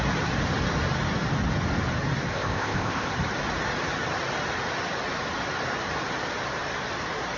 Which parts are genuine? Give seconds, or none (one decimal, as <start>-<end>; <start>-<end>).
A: 0.0-2.3; 3.1-7.4